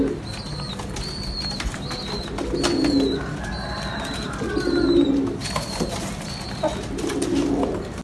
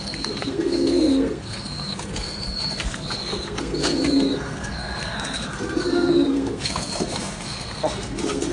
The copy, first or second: second